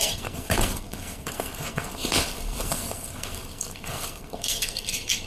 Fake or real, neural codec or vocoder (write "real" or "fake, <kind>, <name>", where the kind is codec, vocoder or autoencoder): fake, codec, SNAC